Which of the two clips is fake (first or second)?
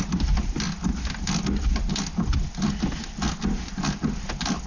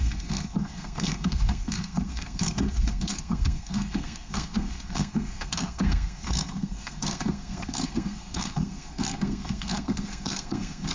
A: second